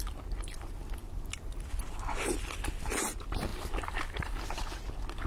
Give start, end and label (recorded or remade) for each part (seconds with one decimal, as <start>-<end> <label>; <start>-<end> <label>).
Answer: 0.0-5.3 recorded